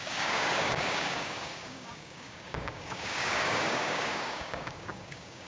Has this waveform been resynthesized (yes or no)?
yes